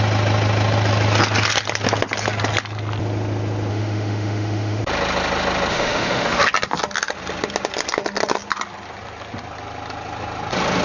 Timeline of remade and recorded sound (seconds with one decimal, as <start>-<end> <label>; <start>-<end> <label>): 0.0-3.7 recorded; 3.7-4.8 remade; 4.8-5.7 recorded; 5.7-6.4 remade; 6.4-10.8 recorded